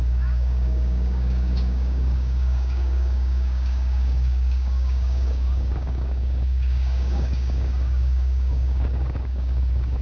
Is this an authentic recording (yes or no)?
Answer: no